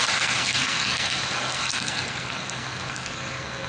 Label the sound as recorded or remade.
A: remade